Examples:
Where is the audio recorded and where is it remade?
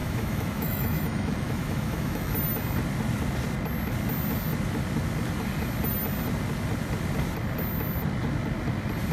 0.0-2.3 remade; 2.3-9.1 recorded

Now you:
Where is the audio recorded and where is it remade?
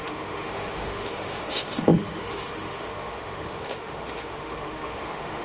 0.0-5.4 remade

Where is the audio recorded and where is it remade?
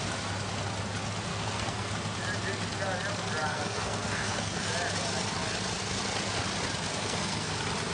0.0-1.3 recorded; 1.3-1.9 remade; 1.9-3.5 recorded; 3.5-4.7 remade; 4.7-6.9 recorded; 6.9-7.5 remade; 7.5-7.9 recorded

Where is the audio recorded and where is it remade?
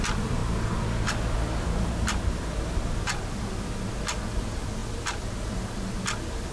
0.0-0.4 remade; 0.4-4.3 recorded; 4.3-4.8 remade; 4.8-6.5 recorded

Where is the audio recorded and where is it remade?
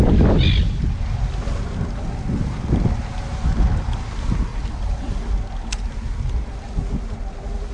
0.0-4.5 recorded; 4.5-5.0 remade; 5.0-7.7 recorded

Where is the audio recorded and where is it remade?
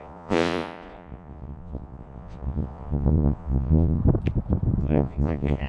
0.0-4.0 remade; 4.0-4.8 recorded; 4.8-5.7 remade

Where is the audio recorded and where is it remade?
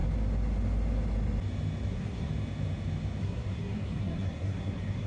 0.0-1.9 recorded; 1.9-2.3 remade; 2.3-3.2 recorded; 3.2-5.1 remade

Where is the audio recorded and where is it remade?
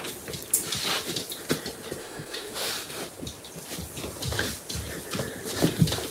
0.0-2.0 recorded; 2.0-2.7 remade; 2.7-6.1 recorded